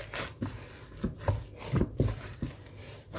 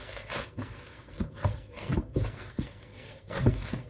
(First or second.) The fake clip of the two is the second